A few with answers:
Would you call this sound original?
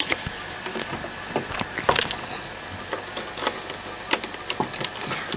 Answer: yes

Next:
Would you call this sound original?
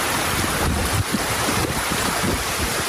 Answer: no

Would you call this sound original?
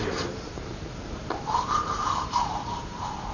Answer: no